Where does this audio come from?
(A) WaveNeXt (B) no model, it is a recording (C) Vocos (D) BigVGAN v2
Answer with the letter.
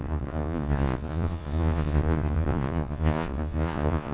C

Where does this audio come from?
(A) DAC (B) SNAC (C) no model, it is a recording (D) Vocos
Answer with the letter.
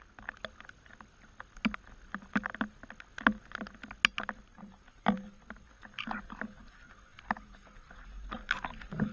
C